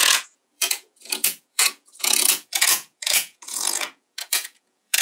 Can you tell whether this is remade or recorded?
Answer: remade